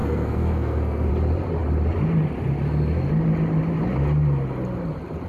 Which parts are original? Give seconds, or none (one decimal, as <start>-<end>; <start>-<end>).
1.1-5.3